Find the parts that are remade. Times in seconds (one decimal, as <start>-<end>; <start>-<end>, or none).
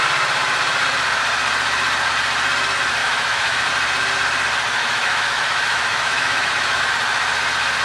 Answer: 3.0-3.7; 4.8-6.9